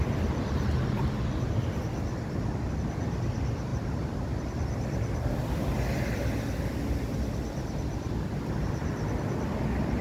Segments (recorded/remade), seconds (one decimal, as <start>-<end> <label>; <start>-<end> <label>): 0.0-10.0 recorded